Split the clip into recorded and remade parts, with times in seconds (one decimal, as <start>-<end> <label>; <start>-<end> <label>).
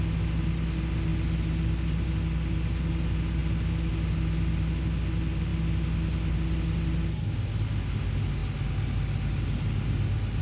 0.0-10.4 recorded